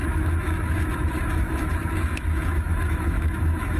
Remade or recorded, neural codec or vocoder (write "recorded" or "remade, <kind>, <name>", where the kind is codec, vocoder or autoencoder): remade, autoencoder, DAC-VAE